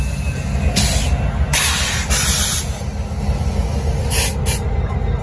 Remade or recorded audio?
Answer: recorded